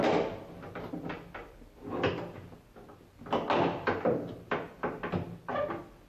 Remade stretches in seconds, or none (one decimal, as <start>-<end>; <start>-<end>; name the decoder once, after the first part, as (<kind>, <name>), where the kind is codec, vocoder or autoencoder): none